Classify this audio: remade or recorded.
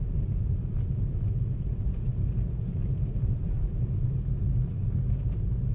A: recorded